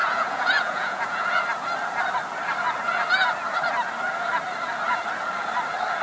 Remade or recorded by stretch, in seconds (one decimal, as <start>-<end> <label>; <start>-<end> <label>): 0.0-1.3 remade; 1.3-6.0 recorded

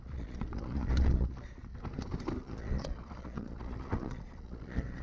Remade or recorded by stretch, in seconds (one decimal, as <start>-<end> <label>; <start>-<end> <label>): 0.0-1.7 remade; 1.7-2.4 recorded; 2.4-5.0 remade

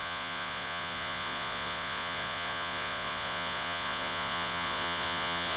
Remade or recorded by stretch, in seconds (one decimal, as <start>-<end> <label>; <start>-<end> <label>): 0.0-5.6 remade

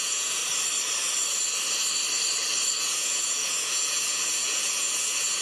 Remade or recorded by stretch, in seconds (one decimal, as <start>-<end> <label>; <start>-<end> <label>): 0.0-0.4 remade; 0.4-2.8 recorded; 2.8-5.4 remade

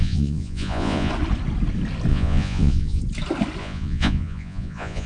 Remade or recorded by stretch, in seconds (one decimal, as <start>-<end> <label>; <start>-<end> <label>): 0.0-1.1 remade; 1.1-2.1 recorded; 2.1-3.0 remade; 3.0-3.6 recorded; 3.6-5.1 remade

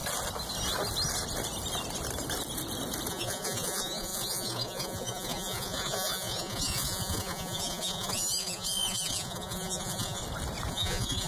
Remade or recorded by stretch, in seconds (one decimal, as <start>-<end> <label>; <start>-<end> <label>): 0.0-3.1 recorded; 3.1-10.2 remade; 10.2-10.7 recorded; 10.7-11.3 remade